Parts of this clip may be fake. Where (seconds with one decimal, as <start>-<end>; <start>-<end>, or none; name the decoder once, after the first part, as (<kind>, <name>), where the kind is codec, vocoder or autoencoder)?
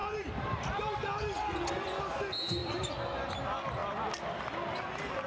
none